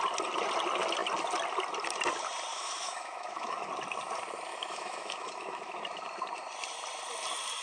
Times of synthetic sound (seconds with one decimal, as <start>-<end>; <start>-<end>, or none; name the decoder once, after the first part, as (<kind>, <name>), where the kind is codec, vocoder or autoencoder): 2.5-3.7 (autoencoder, DAC-VAE); 4.5-5.8